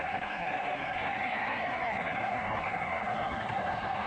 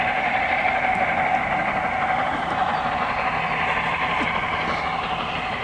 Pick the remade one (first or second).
first